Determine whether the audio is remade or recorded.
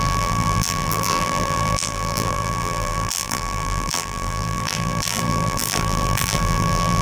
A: remade